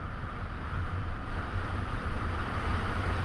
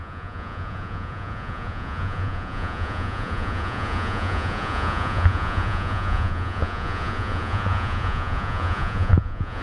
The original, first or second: first